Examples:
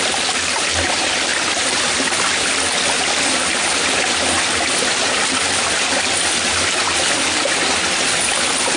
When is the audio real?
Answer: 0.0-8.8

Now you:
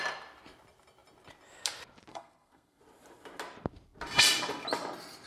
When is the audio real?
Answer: 0.0-2.1; 2.8-5.3

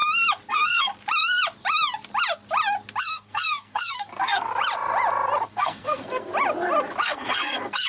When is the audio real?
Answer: 0.0-0.5; 0.9-3.0; 4.5-5.5; 6.3-7.0

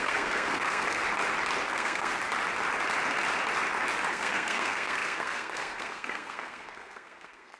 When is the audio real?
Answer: 1.0-1.7; 2.1-4.1

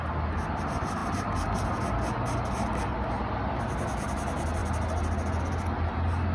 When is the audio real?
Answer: 0.0-6.3